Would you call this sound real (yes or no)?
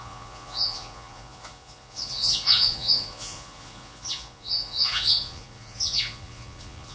no